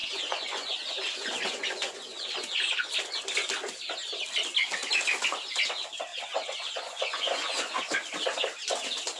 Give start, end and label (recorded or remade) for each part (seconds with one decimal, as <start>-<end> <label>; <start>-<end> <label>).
0.0-2.9 remade; 2.9-6.1 recorded; 6.1-7.8 remade; 7.8-9.2 recorded